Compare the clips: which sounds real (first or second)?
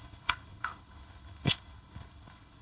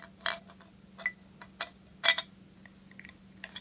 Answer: second